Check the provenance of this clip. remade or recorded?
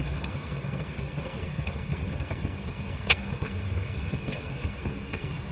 remade